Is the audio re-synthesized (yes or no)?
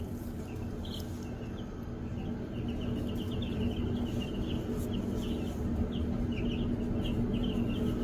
no